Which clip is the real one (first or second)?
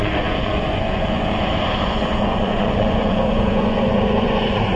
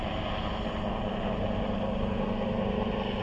second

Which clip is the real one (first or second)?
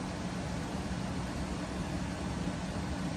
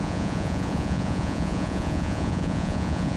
first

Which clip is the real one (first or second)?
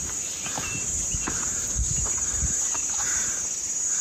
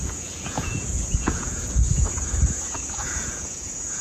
first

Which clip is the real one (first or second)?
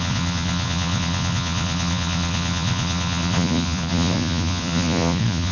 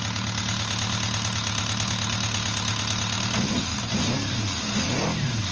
second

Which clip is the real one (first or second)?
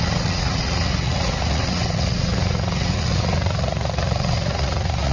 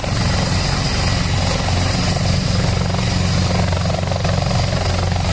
second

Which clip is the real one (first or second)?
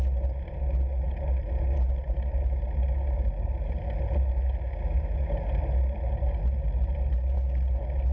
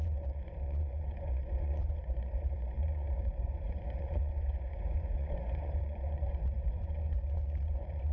first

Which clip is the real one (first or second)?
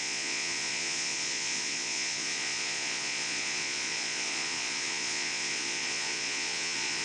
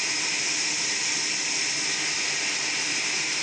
second